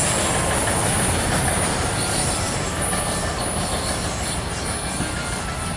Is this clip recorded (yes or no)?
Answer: yes